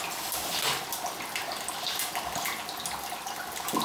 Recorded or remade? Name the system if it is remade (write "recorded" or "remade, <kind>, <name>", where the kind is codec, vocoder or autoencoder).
recorded